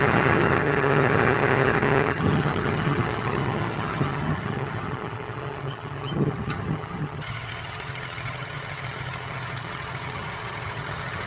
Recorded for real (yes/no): no